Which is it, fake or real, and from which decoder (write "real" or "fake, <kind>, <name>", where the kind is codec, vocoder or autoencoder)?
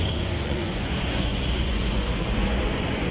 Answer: fake, vocoder, Vocos